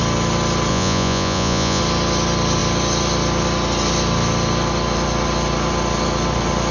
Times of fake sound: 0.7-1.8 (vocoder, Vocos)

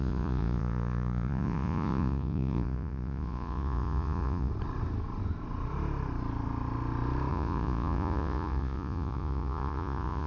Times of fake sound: 0.0-4.5 (vocoder, Vocos); 7.3-10.3

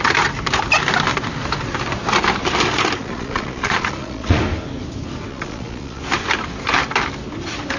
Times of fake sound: 3.0-4.4 (vocoder, Vocos); 5.3-6.0

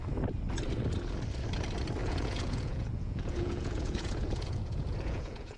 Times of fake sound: 2.0-5.6 (vocoder, Vocos)